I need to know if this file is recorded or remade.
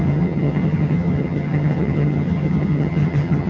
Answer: remade